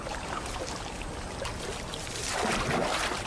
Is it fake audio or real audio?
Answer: real